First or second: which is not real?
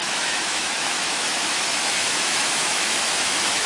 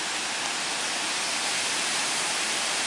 first